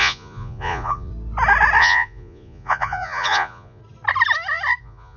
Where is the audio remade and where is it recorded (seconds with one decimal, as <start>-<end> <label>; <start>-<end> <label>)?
0.0-1.1 remade; 1.1-1.8 recorded; 1.8-3.8 remade; 3.8-4.8 recorded; 4.8-5.2 remade